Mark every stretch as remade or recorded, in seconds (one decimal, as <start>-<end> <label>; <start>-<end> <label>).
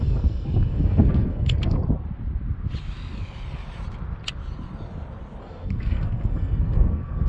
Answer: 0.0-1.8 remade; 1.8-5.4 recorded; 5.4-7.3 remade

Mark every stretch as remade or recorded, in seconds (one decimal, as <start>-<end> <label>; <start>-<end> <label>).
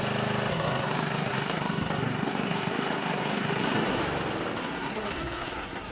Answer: 0.0-0.5 recorded; 0.5-4.0 remade; 4.0-4.6 recorded; 4.6-5.9 remade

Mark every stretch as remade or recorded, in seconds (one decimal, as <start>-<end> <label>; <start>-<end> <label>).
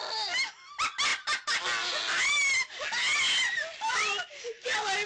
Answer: 0.0-5.1 recorded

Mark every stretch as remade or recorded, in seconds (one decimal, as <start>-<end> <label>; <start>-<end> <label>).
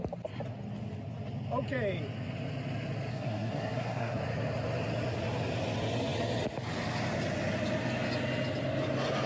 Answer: 0.0-3.1 recorded; 3.1-4.2 remade; 4.2-9.3 recorded